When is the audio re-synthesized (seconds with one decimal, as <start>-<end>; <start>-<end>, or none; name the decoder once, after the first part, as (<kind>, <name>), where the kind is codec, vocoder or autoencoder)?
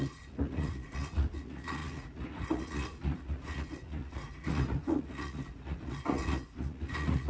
0.0-7.3 (vocoder, Vocos)